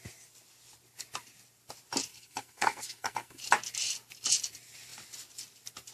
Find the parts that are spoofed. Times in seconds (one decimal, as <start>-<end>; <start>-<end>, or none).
2.1-3.4